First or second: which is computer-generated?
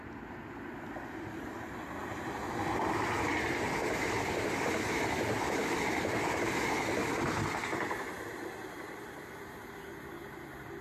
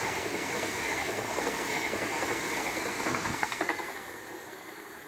second